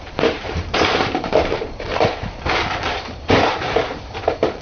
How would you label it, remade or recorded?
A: remade